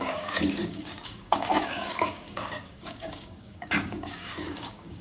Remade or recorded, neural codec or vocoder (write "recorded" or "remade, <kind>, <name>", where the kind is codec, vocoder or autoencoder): remade, codec, DAC